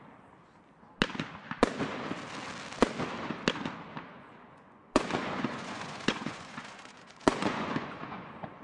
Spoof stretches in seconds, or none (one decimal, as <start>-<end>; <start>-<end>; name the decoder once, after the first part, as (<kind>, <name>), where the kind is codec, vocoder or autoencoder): 4.1-8.6 (vocoder, Vocos)